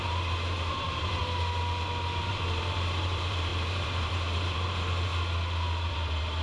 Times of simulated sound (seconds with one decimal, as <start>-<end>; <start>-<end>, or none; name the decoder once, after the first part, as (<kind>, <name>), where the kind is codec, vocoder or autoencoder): 0.0-1.2 (vocoder, BigVGAN v2); 2.3-5.1; 5.9-6.4